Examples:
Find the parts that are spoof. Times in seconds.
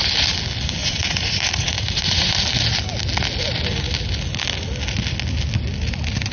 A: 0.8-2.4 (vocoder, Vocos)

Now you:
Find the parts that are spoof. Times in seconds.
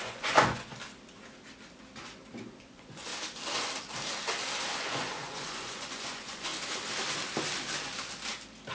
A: 0.0-0.7 (vocoder, Vocos); 2.6-3.1; 4.7-6.5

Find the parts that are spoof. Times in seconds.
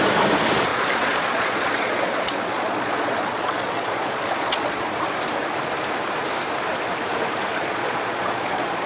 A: 0.7-4.9 (vocoder, Vocos); 7.5-8.9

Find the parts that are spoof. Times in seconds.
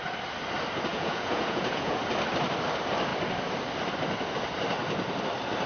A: 0.9-2.0 (vocoder, Vocos)